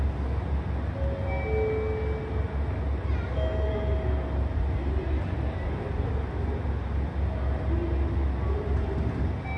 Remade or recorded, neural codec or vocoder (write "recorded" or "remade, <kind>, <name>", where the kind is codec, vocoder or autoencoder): recorded